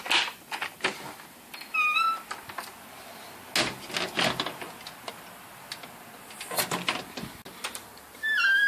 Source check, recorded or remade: recorded